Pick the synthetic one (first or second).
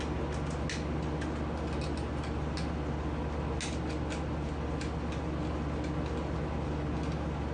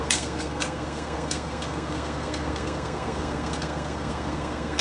second